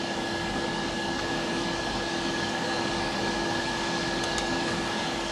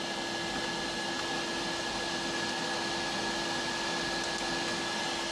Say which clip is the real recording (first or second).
second